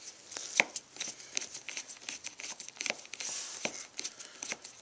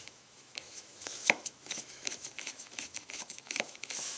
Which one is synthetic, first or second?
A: second